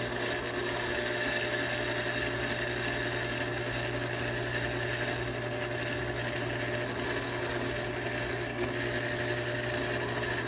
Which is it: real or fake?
real